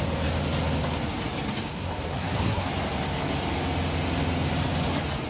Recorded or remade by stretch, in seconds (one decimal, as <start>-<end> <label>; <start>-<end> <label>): 0.0-1.7 recorded; 1.7-2.7 remade; 2.7-5.3 recorded